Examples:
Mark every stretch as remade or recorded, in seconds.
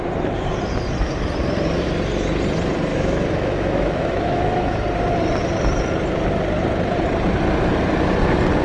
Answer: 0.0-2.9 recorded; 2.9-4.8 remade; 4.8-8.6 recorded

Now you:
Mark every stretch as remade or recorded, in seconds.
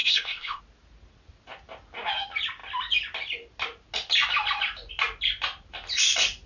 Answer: 0.0-0.6 remade; 0.6-6.5 recorded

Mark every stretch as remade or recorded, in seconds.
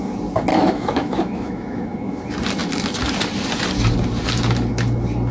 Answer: 0.0-0.5 recorded; 0.5-2.2 remade; 2.2-5.3 recorded